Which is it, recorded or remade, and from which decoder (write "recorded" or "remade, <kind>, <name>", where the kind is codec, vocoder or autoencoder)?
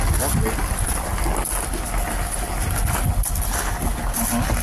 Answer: recorded